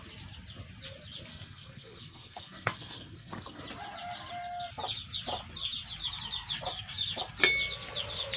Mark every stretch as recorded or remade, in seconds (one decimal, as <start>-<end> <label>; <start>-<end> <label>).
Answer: 0.0-1.3 recorded; 1.3-3.6 remade; 3.6-8.4 recorded